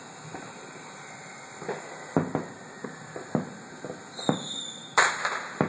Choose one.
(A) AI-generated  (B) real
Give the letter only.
B